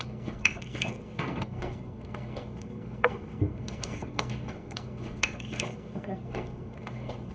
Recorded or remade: remade